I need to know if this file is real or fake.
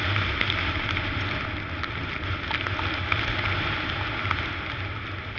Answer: real